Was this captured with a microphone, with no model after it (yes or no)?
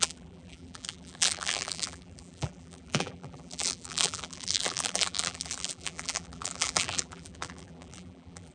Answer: no